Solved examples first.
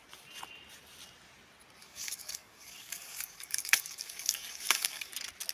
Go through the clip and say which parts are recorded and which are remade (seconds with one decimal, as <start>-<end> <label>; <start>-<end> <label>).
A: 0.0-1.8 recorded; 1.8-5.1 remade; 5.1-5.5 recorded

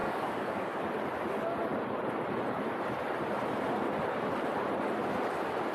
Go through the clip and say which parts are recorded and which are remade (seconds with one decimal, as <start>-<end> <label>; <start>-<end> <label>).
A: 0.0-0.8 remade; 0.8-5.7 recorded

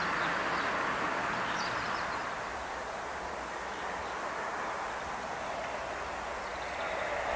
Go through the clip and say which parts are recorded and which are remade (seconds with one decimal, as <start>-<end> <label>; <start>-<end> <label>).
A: 0.0-7.4 recorded

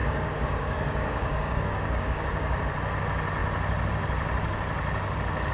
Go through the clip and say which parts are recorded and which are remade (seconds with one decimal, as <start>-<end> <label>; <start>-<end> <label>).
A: 0.0-2.6 remade; 2.6-5.5 recorded

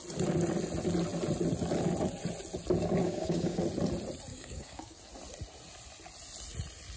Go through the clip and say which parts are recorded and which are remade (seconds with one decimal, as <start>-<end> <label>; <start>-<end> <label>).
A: 0.0-3.0 recorded; 3.0-3.6 remade; 3.6-4.3 recorded; 4.3-5.0 remade; 5.0-7.0 recorded

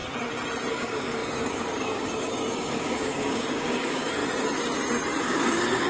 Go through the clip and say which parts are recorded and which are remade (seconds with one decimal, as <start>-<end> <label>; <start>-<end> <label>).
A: 0.0-0.7 recorded; 0.7-4.2 remade; 4.2-5.2 recorded; 5.2-5.9 remade